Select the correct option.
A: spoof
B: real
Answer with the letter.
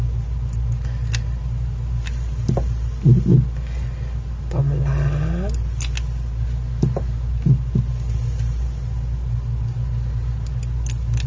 B